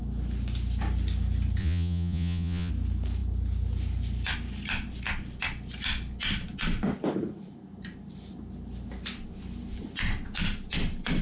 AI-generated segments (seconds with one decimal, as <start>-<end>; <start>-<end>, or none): 1.6-2.7